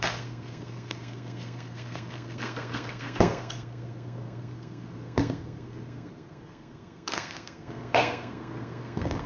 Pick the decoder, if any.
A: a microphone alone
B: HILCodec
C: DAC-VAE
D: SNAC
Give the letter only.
D